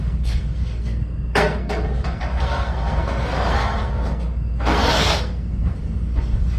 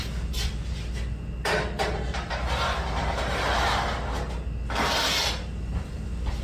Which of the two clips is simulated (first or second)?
first